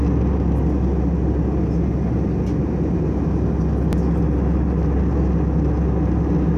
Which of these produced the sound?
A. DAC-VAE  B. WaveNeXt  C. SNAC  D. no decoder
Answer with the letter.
D